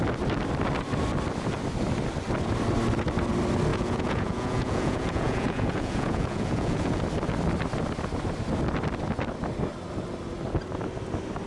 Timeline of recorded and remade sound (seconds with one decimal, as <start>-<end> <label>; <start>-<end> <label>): 0.0-3.7 recorded; 3.7-7.0 remade; 7.0-11.5 recorded